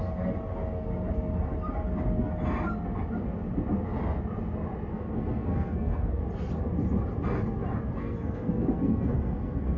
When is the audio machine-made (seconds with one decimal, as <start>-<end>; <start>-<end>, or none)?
4.9-6.2; 8.0-9.8